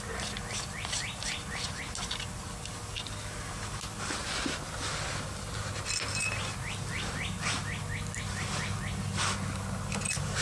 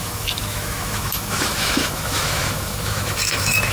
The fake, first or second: second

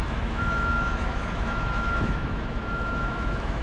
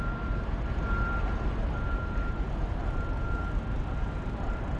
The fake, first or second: first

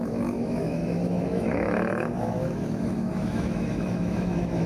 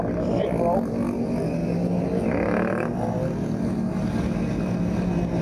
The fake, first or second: first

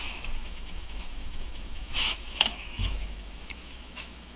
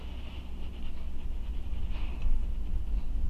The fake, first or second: first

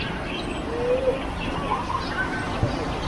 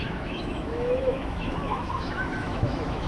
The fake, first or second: second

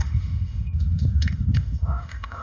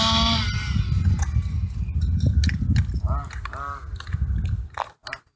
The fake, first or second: first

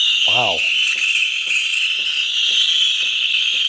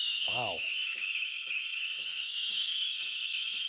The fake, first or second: second